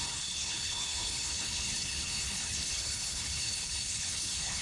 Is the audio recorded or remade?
remade